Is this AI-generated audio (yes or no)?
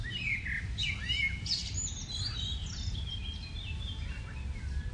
no